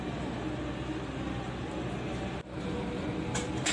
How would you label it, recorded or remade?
recorded